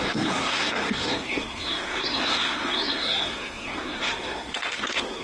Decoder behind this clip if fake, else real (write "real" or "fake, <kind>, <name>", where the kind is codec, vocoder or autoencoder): fake, codec, SNAC